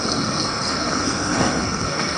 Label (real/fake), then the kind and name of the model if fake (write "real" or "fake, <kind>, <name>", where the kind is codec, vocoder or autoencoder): fake, codec, SNAC